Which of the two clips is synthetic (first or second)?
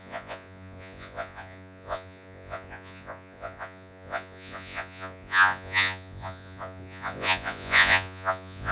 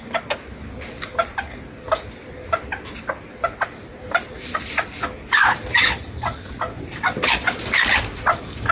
first